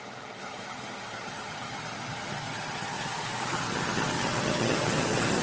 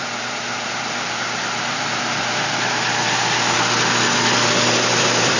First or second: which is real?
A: second